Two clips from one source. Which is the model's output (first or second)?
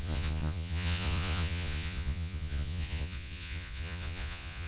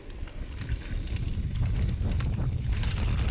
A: first